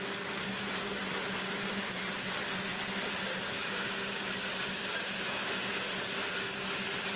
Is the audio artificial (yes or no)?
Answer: no